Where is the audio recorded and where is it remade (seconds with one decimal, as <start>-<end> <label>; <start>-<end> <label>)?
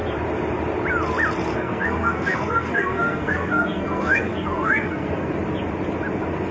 0.0-1.5 recorded; 1.5-5.3 remade; 5.3-6.5 recorded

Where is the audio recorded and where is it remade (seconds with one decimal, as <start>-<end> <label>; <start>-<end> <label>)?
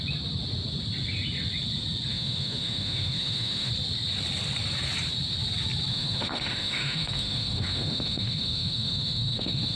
0.0-2.1 recorded; 2.1-3.7 remade; 3.7-5.9 recorded; 5.9-9.8 remade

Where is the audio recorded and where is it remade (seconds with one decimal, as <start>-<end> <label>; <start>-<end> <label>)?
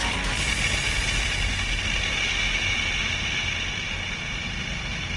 0.0-5.2 recorded